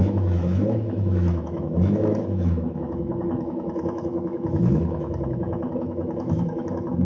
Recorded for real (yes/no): no